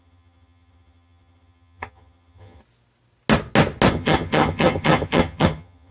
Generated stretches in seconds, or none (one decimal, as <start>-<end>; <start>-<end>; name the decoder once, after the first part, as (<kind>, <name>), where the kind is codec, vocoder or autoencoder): 0.0-2.6 (vocoder, HiFi-GAN); 3.9-5.9